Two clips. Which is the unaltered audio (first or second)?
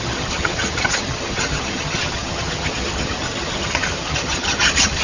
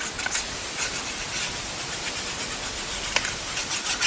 second